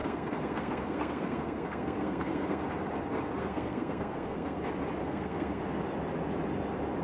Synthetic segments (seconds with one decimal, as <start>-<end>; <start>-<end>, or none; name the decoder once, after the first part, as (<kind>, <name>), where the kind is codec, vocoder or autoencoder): 0.0-2.6 (codec, SNAC); 3.4-4.6; 5.0-5.6